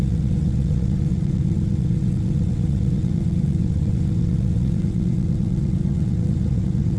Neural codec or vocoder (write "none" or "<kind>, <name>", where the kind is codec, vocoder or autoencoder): vocoder, WaveNeXt